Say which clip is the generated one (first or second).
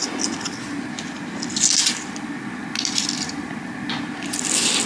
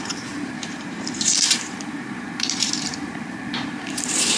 second